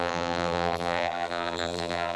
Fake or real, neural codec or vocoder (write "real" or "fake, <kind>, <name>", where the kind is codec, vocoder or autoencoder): fake, vocoder, BigVGAN v2